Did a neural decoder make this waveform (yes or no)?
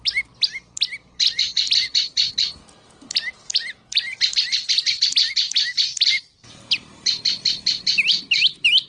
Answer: no